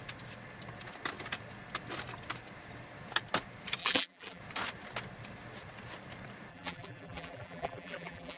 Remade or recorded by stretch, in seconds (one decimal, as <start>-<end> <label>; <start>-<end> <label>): 0.0-3.8 recorded; 3.8-4.4 remade; 4.4-6.5 recorded; 6.5-8.4 remade